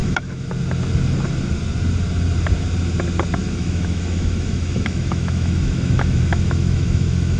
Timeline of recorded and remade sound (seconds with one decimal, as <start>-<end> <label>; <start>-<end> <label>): 0.0-0.5 remade; 0.5-3.4 recorded; 3.4-7.4 remade